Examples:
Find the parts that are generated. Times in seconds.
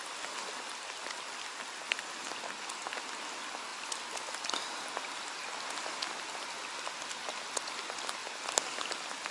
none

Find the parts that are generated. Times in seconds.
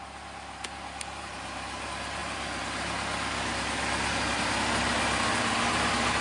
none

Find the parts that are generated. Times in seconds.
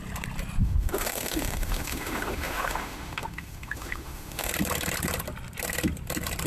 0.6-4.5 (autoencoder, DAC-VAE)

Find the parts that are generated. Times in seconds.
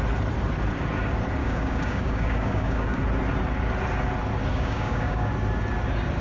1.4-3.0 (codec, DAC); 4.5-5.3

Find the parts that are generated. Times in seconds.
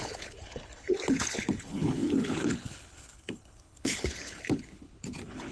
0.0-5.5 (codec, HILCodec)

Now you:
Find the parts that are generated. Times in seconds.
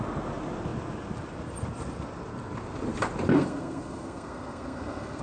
3.3-5.2 (codec, SNAC)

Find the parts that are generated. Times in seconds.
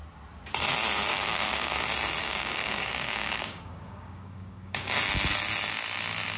1.1-1.8 (codec, DAC); 2.2-5.0